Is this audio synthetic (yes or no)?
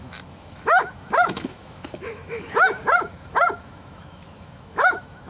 yes